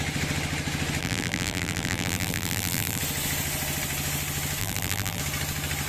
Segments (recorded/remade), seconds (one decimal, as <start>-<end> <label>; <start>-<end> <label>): 0.0-1.0 recorded; 1.0-3.0 remade; 3.0-4.6 recorded; 4.6-5.2 remade; 5.2-5.9 recorded